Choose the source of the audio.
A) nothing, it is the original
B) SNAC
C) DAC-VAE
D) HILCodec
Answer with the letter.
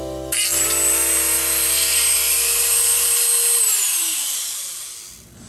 A